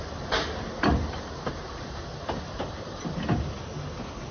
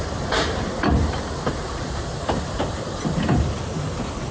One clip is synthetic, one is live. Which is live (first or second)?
first